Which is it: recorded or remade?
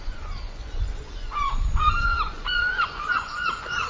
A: remade